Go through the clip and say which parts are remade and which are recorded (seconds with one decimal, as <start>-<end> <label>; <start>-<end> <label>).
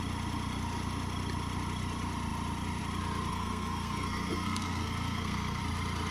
0.0-3.3 recorded; 3.3-5.6 remade; 5.6-6.1 recorded